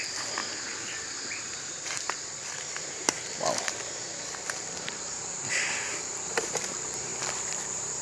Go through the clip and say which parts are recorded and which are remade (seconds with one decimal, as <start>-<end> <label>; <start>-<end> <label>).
0.0-0.4 remade; 0.4-2.8 recorded; 2.8-8.0 remade